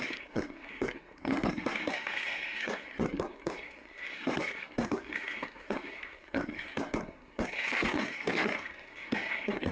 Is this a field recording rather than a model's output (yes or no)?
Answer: no